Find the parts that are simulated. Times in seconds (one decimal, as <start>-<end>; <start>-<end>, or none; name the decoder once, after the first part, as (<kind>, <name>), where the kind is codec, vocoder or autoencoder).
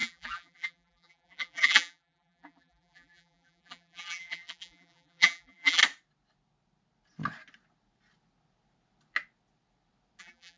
0.0-5.8 (vocoder, BigVGAN v2); 10.2-10.6